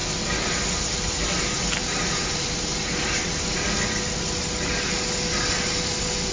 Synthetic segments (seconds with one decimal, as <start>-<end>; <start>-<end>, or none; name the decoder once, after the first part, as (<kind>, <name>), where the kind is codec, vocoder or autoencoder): 1.8-2.5 (vocoder, BigVGAN v2)